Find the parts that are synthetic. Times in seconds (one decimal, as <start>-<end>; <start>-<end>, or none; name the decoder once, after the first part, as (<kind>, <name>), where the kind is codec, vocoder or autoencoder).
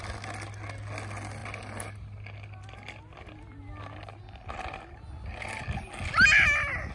none